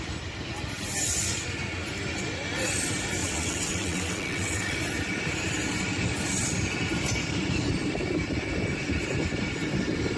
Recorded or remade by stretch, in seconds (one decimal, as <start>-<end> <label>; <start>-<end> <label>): 0.0-3.2 recorded; 3.2-4.8 remade; 4.8-10.2 recorded